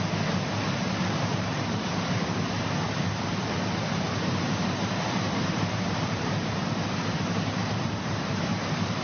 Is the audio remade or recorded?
remade